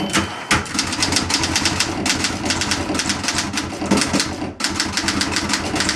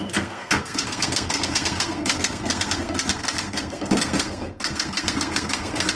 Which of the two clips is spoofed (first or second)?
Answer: second